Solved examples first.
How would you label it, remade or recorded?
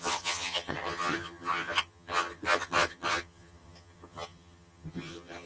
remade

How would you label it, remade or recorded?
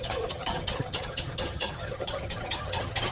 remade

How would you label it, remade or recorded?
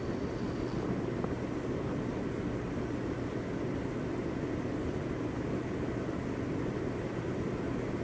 recorded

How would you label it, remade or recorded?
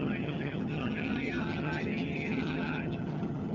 remade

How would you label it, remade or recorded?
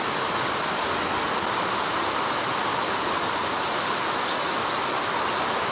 recorded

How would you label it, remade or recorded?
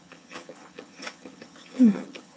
remade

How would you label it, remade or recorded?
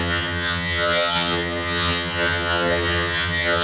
remade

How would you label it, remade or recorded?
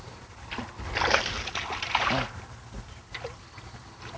recorded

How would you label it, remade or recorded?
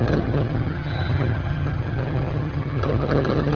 remade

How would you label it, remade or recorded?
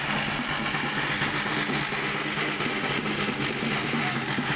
recorded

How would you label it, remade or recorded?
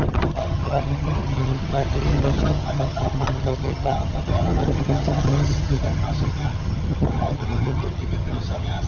remade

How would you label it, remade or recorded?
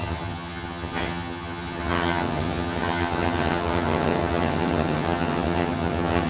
remade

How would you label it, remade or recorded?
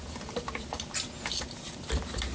recorded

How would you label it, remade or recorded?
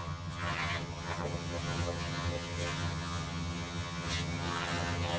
remade